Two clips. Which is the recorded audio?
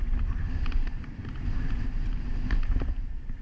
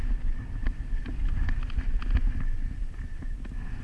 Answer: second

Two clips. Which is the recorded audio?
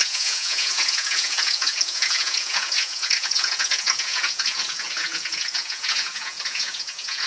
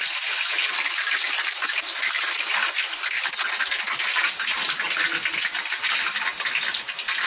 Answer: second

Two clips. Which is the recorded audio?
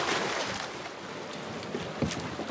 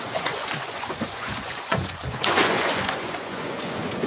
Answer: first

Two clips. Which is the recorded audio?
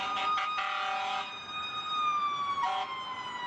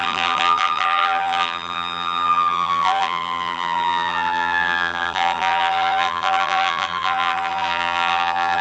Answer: first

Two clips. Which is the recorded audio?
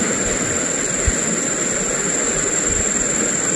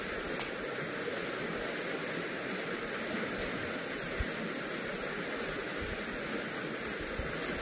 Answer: second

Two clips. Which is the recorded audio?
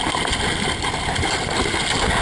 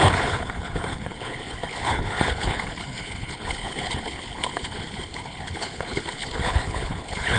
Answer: first